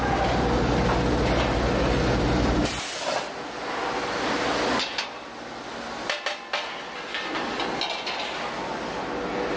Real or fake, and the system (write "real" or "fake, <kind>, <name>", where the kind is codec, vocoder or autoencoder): real